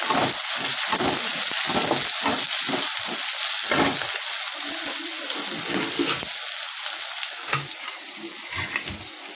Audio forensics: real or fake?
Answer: real